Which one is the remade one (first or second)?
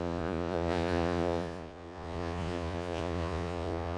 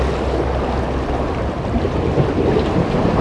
first